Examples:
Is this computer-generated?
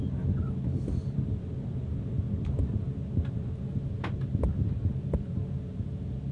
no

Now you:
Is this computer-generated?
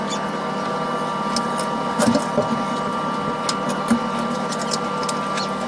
no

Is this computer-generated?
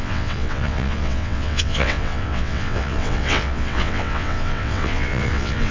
yes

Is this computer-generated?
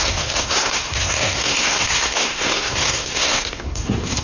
yes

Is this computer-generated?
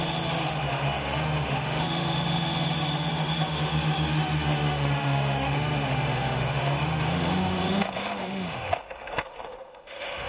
yes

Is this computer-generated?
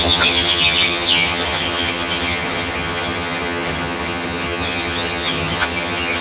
yes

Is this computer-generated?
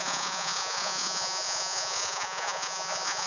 yes